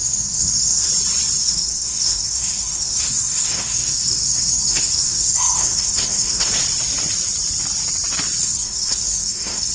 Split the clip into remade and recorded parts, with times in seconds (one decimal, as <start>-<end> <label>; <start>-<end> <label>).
0.0-0.9 remade; 0.9-1.4 recorded; 1.4-6.5 remade; 6.5-8.4 recorded; 8.4-9.7 remade